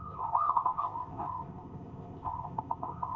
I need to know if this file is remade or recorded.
remade